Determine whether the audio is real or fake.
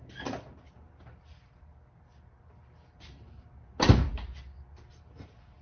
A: real